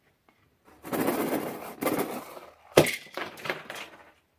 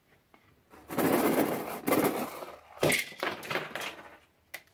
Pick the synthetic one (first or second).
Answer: first